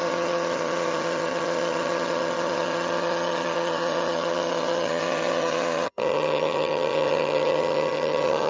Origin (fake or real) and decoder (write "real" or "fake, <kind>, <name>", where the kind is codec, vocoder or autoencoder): fake, vocoder, HiFi-GAN